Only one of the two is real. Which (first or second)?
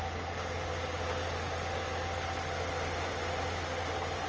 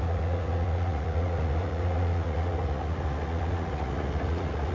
first